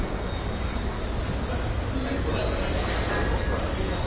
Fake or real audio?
real